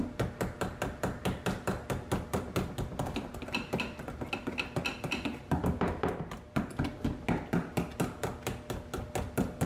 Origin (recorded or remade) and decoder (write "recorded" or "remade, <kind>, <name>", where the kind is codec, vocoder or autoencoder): recorded